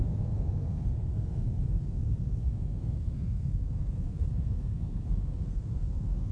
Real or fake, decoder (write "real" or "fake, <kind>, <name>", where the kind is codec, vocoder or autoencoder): fake, codec, SNAC